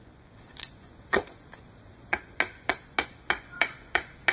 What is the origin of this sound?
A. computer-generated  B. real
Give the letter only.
A